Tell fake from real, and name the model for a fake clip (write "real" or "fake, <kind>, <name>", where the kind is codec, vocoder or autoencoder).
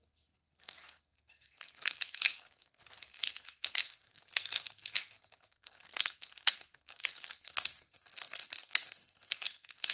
fake, codec, SNAC